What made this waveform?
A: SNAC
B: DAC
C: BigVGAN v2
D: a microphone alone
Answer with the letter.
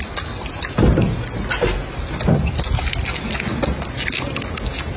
D